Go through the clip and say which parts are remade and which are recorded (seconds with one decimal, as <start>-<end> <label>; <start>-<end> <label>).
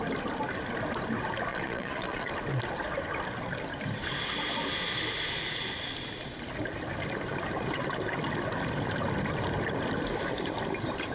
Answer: 0.0-1.5 recorded; 1.5-2.3 remade; 2.3-11.1 recorded